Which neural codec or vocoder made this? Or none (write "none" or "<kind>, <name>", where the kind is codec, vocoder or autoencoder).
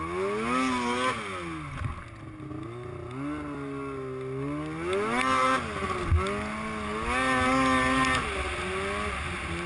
none